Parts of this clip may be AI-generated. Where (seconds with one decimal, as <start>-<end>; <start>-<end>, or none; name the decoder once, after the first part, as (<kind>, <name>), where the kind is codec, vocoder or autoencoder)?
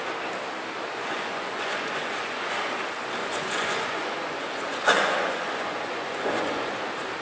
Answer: 0.9-2.7 (vocoder, Vocos); 3.2-6.7